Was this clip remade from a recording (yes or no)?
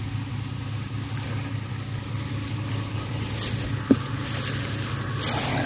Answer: no